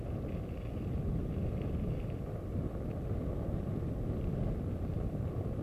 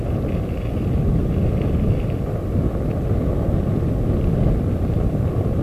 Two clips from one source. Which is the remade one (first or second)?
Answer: first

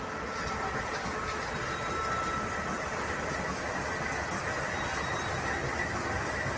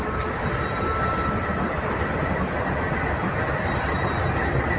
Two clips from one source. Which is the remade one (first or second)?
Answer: second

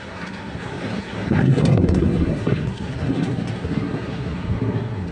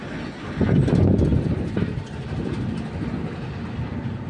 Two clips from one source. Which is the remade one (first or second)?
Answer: first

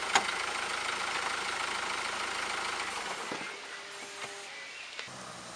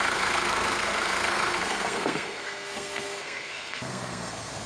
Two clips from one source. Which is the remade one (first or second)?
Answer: second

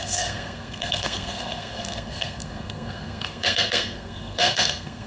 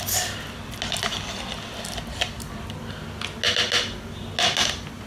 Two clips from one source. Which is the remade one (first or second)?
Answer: first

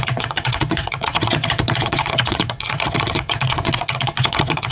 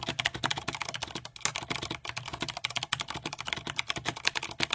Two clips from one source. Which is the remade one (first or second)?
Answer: first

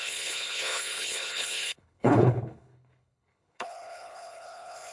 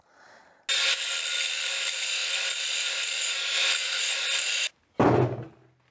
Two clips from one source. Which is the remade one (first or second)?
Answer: first